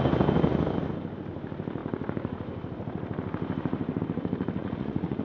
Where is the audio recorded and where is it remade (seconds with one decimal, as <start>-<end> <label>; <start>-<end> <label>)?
0.0-4.6 recorded; 4.6-5.2 remade